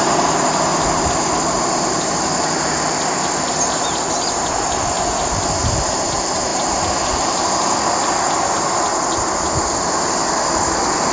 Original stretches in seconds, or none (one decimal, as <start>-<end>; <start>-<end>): 0.0-11.1